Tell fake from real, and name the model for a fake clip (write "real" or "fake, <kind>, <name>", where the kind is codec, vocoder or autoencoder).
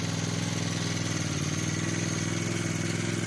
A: real